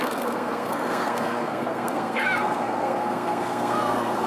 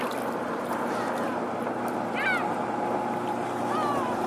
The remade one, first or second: first